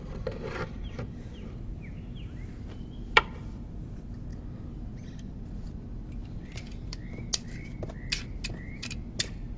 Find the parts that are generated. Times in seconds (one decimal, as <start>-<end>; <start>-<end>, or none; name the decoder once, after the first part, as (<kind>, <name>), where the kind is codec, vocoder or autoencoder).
none